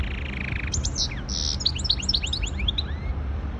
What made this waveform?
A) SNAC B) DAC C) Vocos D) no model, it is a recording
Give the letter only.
D